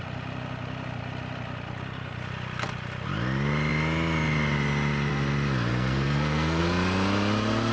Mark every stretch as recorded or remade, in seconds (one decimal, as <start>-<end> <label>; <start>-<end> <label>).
0.0-5.7 recorded; 5.7-6.6 remade; 6.6-7.7 recorded